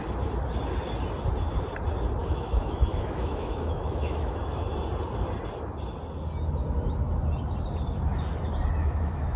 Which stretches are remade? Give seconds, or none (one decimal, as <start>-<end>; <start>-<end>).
2.2-4.6; 8.8-9.4